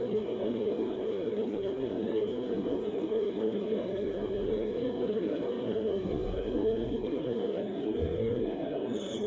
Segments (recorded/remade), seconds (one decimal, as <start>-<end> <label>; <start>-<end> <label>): 0.0-9.3 remade